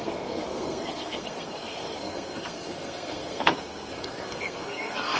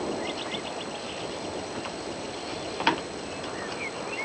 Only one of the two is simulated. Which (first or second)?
first